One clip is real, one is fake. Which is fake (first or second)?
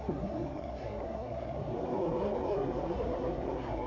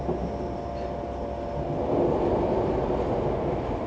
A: first